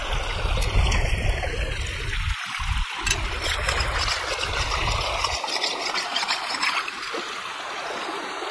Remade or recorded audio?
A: recorded